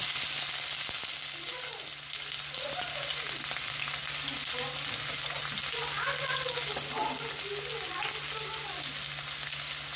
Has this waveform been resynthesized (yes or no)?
no